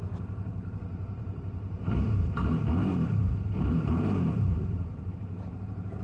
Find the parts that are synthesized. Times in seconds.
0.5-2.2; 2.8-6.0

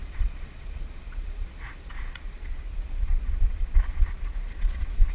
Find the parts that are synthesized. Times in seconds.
0.0-5.1

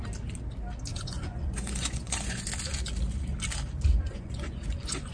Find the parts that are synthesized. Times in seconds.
0.9-2.4; 4.0-5.1

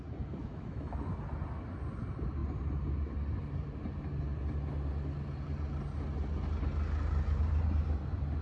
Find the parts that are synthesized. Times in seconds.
0.4-1.1

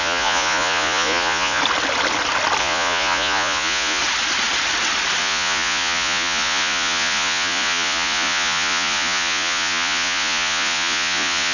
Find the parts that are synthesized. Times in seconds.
0.0-1.6; 2.6-4.0; 5.2-11.5